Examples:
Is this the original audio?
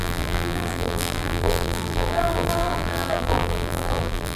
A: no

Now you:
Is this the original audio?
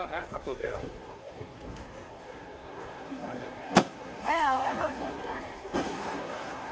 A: no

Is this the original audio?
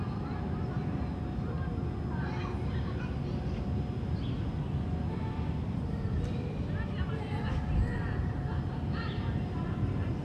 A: yes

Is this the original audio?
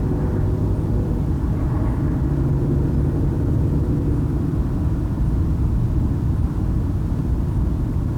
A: yes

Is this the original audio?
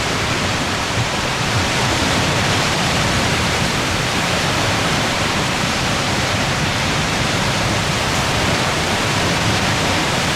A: no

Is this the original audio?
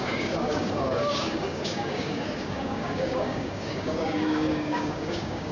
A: no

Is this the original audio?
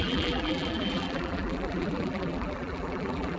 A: no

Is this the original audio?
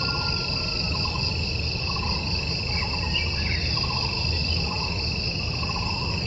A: no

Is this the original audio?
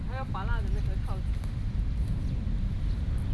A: yes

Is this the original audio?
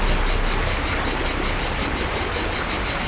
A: yes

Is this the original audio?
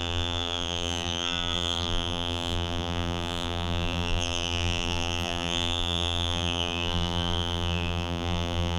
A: no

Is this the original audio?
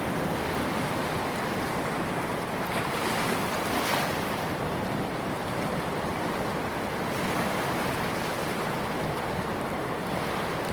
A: yes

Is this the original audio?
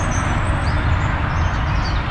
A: yes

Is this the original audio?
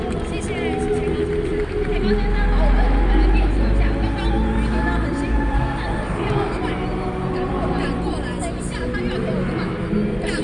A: yes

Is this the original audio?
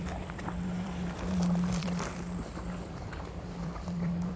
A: no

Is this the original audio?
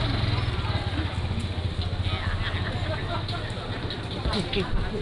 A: yes